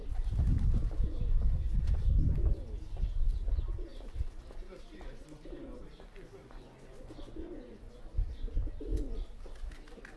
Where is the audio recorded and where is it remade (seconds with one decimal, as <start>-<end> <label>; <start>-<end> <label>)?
0.0-6.4 recorded; 6.4-7.9 remade; 7.9-10.2 recorded